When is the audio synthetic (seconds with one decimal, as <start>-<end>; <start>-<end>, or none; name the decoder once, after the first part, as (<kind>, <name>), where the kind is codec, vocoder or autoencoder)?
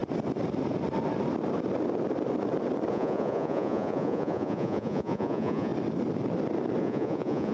2.9-5.7 (vocoder, Vocos); 6.8-7.5